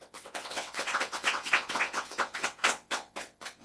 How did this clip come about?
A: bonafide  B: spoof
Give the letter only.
B